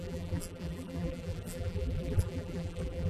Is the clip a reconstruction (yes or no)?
yes